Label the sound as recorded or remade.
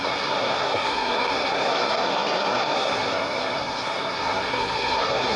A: remade